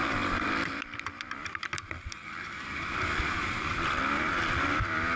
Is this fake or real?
fake